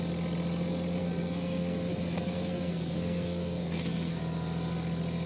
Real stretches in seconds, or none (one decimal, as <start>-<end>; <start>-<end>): 0.0-1.0; 4.2-5.3